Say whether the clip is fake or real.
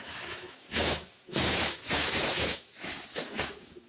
fake